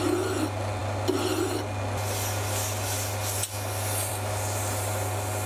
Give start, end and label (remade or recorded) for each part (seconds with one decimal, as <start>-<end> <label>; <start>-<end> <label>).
0.0-5.5 recorded

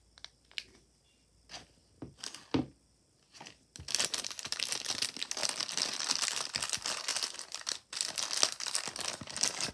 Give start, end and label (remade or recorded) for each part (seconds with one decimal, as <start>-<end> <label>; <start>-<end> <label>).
0.0-9.7 recorded

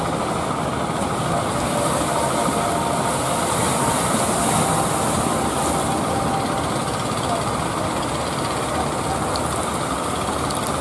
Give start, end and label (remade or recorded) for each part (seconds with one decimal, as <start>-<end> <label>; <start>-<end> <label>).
0.0-5.3 recorded; 5.3-5.9 remade; 5.9-10.8 recorded

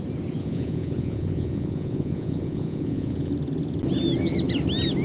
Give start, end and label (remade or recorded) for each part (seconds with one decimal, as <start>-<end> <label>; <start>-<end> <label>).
0.0-0.4 recorded; 0.4-3.3 remade; 3.3-5.0 recorded

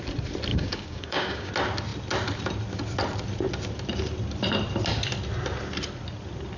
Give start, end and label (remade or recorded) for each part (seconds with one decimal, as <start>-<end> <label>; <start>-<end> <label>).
0.0-0.5 recorded; 0.5-1.5 remade; 1.5-6.6 recorded